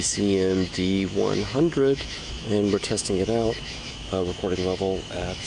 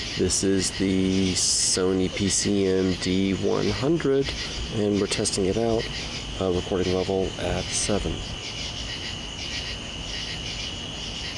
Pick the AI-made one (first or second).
first